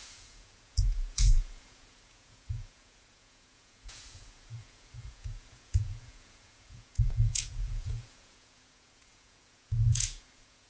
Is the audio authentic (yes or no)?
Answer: no